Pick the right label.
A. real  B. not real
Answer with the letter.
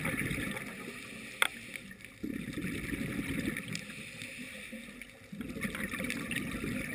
A